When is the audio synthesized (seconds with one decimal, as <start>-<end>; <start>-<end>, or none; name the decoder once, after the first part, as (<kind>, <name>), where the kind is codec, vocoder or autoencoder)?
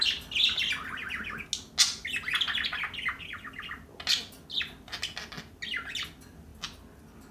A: none